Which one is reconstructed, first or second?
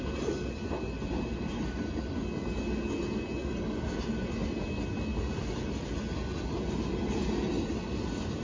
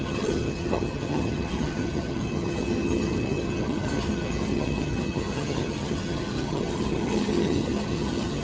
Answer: second